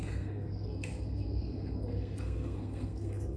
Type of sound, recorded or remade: remade